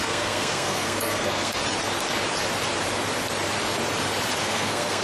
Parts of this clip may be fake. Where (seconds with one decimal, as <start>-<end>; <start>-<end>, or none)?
0.0-1.6; 4.4-5.0